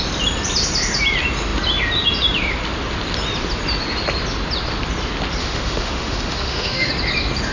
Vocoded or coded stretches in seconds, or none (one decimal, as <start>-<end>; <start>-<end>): 5.4-6.9